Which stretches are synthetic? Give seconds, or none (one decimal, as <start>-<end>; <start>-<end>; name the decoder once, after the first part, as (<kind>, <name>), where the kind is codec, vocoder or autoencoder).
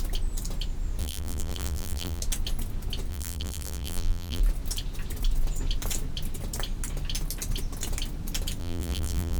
1.0-2.2 (vocoder, BigVGAN v2); 3.1-4.4; 8.6-9.4